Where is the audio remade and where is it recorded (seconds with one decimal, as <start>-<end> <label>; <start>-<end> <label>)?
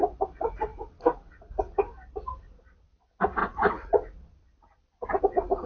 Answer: 0.0-5.7 recorded